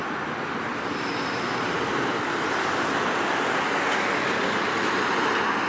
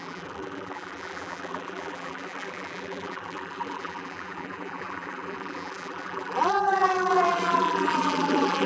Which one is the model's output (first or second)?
second